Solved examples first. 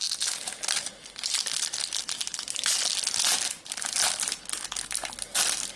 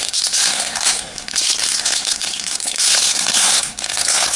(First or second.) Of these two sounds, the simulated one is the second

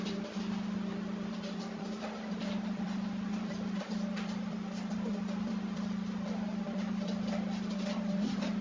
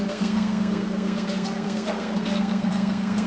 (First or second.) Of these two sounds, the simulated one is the second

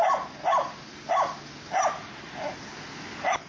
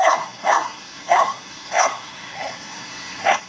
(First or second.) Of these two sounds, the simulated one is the second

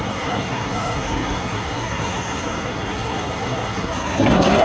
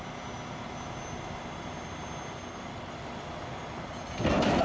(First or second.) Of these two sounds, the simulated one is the first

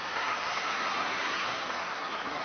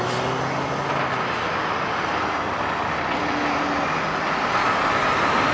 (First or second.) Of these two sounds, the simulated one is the first